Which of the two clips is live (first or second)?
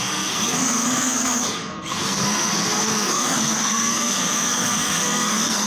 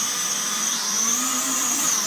second